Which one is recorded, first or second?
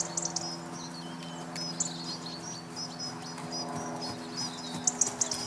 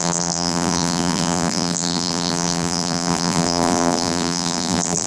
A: first